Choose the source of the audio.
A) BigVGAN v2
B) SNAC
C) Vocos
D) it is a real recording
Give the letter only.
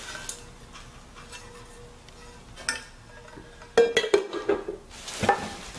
D